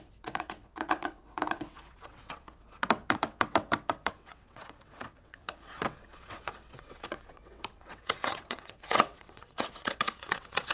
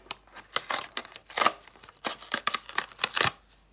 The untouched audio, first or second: second